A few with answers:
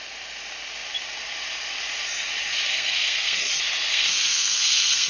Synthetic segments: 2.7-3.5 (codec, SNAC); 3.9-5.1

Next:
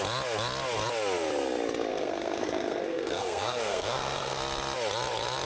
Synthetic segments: 1.9-4.4 (codec, SNAC)